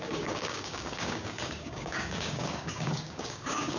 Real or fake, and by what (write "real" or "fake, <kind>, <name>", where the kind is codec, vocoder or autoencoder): fake, codec, DAC